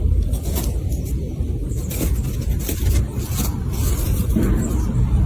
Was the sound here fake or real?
real